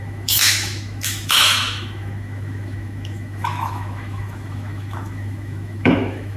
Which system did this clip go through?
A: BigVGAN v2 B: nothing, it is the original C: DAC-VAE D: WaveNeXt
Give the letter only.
C